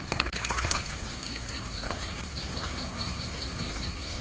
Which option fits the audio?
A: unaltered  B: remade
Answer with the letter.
B